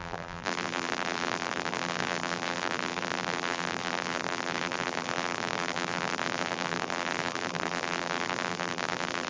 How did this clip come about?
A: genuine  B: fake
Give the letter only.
B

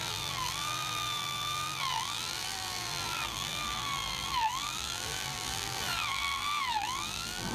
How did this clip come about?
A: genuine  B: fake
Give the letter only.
B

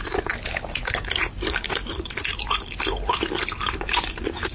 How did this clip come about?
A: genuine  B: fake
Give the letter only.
B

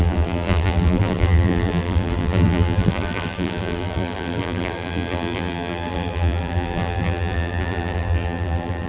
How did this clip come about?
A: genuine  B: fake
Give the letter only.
B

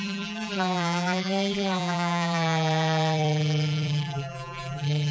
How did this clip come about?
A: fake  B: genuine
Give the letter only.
A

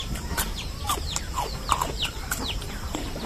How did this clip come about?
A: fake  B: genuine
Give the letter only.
A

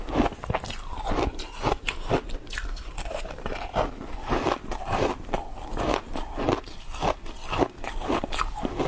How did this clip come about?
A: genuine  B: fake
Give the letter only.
A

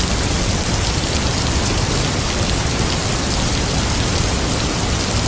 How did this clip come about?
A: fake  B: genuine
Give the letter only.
B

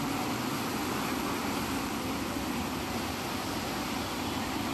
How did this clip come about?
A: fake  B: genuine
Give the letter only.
B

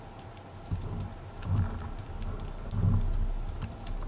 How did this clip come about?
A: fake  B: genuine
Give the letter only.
B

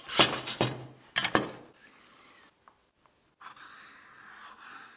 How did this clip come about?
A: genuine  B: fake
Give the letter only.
A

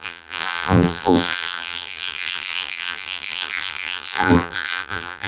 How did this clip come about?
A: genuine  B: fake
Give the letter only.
B